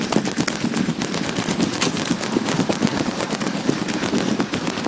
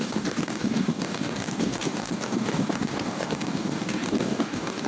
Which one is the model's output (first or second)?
second